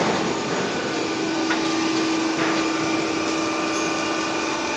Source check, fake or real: real